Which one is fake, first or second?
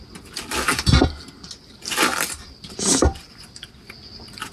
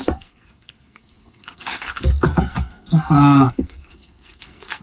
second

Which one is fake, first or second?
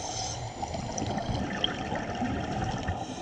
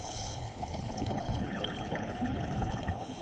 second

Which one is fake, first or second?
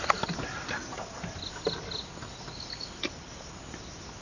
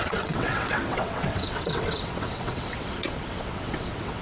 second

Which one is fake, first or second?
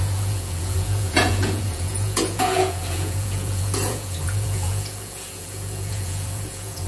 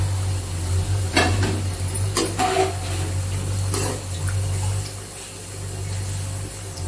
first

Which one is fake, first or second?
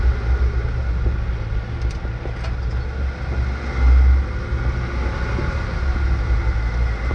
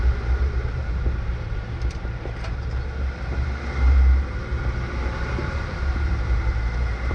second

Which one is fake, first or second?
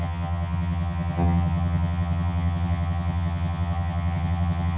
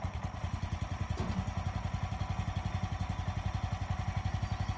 first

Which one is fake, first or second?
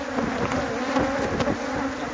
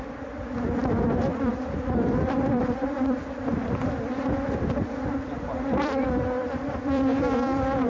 second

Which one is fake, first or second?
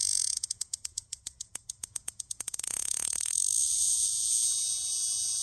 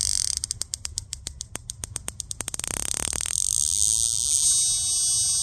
first